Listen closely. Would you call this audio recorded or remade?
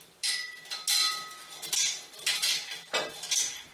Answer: recorded